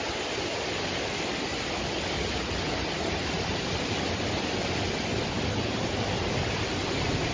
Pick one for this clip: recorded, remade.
recorded